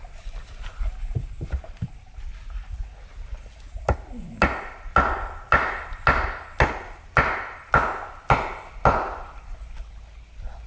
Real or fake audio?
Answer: real